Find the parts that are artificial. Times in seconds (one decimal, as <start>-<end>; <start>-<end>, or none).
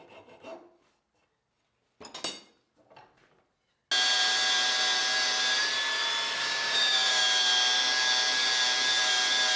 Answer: 6.4-7.2